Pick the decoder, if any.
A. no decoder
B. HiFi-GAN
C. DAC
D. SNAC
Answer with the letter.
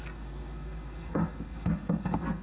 D